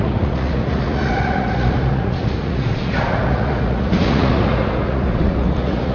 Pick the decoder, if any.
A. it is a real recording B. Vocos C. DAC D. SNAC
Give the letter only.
B